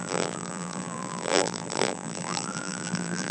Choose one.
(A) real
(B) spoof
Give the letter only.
B